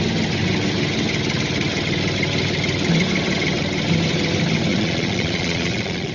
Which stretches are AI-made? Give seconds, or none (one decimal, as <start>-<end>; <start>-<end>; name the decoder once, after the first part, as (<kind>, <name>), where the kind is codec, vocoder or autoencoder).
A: 4.7-6.1 (vocoder, Vocos)